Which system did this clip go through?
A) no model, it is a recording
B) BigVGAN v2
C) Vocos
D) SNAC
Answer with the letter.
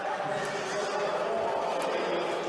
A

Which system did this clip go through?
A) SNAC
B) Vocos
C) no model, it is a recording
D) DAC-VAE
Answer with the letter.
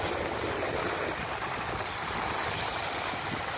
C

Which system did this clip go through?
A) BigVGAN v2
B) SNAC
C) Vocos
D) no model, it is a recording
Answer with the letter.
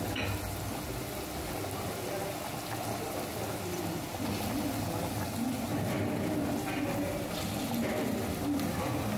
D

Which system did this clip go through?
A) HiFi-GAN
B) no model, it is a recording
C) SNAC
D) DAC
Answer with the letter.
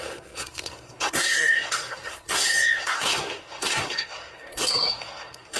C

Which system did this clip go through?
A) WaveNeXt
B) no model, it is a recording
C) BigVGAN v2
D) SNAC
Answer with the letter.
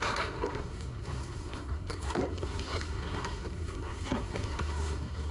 D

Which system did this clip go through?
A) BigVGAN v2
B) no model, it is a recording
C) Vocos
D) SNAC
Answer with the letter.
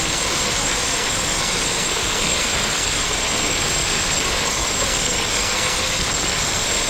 D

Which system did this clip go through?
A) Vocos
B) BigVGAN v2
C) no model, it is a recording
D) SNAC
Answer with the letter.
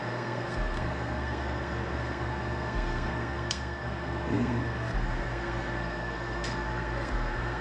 D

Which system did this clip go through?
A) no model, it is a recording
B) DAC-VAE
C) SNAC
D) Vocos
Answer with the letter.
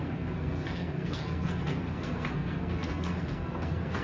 C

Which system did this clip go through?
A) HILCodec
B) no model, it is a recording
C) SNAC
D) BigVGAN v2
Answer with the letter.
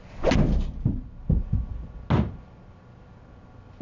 B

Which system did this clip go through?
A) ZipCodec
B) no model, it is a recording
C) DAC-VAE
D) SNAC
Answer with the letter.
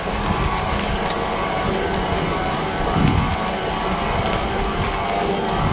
B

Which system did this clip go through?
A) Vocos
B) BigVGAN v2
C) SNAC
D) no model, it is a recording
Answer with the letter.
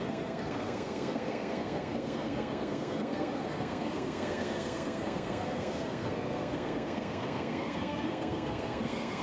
C